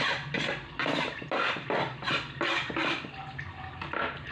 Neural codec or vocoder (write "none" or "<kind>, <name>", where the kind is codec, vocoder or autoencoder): none